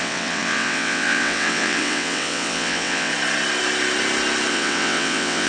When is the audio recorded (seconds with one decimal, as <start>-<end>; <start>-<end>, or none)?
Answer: 3.1-4.5

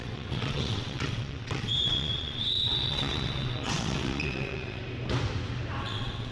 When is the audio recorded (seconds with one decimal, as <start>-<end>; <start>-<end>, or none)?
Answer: 4.8-5.8

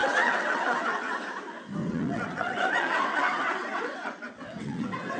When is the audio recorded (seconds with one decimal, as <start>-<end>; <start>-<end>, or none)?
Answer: 1.1-1.8

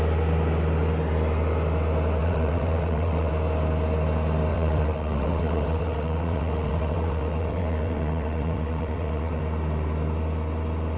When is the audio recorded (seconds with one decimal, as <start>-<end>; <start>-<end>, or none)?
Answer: 0.0-2.2; 3.3-4.5; 9.4-11.0